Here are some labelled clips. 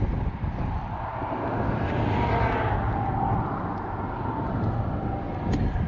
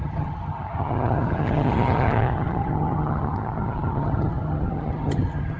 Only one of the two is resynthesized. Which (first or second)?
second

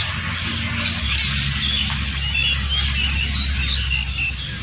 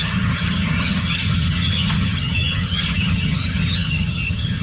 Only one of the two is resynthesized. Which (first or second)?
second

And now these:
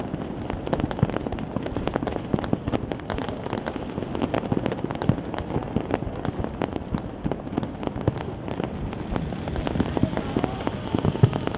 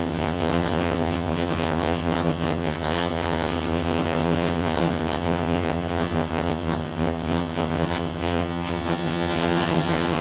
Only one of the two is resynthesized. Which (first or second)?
second